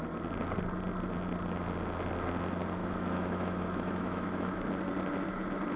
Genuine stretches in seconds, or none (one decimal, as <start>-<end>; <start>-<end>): 0.0-2.8; 4.7-5.8